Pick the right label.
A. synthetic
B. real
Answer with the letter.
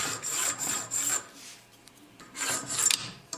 A